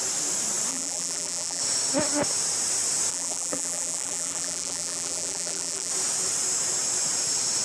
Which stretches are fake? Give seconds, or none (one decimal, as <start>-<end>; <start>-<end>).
0.7-1.6; 3.1-5.9